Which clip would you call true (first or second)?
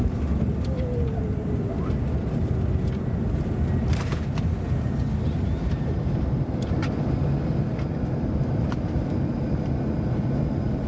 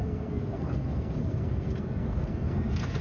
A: first